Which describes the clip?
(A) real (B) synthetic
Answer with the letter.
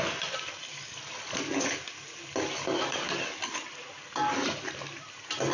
A